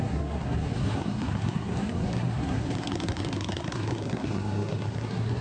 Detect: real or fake fake